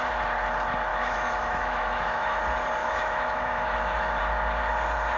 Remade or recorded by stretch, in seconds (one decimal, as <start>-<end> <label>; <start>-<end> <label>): 0.0-0.9 recorded; 0.9-2.4 remade; 2.4-2.8 recorded; 2.8-4.2 remade; 4.2-5.2 recorded